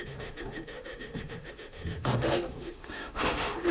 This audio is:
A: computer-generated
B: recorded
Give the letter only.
A